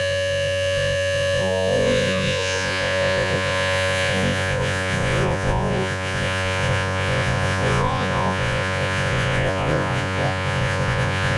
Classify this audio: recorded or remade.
remade